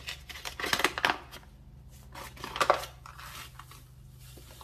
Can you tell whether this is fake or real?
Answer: real